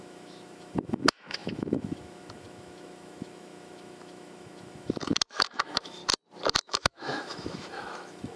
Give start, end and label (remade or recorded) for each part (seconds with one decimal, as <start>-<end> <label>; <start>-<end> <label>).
0.0-6.0 remade; 6.0-6.6 recorded; 6.6-8.4 remade